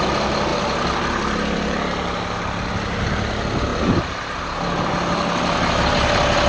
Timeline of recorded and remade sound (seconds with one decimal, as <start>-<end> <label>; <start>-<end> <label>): 0.0-6.5 recorded